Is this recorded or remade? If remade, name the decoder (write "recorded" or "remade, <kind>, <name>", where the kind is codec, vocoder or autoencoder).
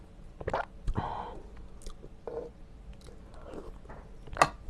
recorded